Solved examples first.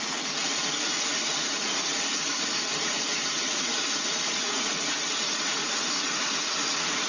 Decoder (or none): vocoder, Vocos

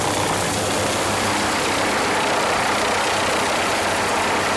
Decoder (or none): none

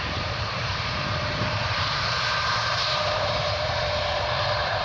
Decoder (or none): vocoder, BigVGAN v2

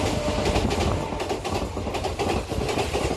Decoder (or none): none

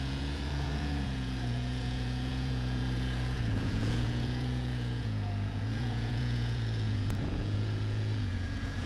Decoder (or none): vocoder, Vocos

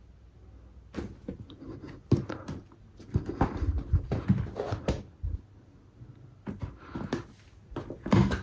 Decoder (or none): none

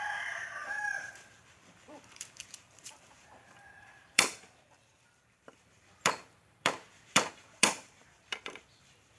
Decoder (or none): vocoder, BigVGAN v2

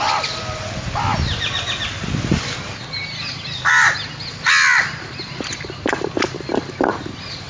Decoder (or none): none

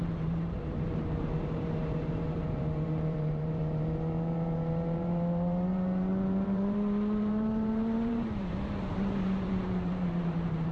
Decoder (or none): vocoder, BigVGAN v2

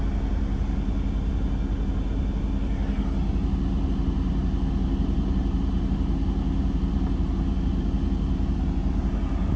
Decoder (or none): none